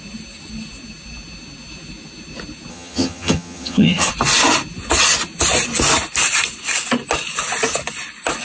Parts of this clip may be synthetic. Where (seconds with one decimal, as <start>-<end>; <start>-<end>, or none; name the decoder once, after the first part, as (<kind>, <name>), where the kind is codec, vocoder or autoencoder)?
2.7-4.1 (vocoder, HiFi-GAN)